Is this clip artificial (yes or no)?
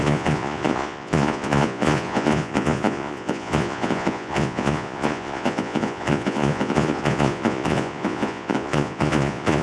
yes